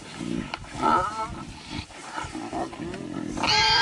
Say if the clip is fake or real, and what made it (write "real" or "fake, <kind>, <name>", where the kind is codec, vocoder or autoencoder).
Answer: real